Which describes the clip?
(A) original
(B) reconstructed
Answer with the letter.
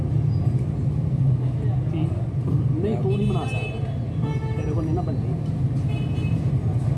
A